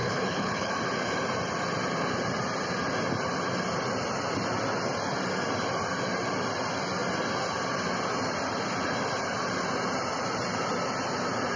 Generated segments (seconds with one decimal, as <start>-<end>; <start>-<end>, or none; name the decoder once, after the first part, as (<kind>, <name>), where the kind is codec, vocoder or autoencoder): 0.0-0.7 (codec, HILCodec)